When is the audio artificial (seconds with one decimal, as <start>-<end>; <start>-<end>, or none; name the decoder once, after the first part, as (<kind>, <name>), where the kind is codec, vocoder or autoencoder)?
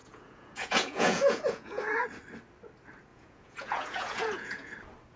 0.0-1.8 (vocoder, Vocos); 3.1-4.7